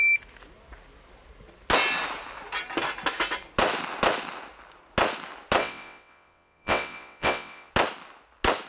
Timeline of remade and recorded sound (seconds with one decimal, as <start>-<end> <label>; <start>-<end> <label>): 0.0-5.6 recorded; 5.6-7.7 remade; 7.7-8.7 recorded